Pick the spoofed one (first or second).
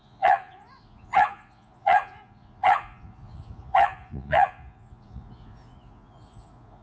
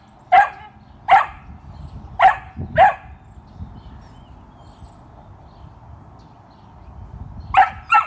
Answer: first